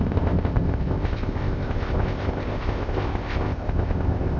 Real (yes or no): no